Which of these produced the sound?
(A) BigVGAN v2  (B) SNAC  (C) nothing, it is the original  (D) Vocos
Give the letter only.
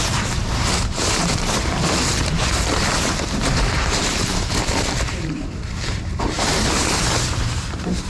A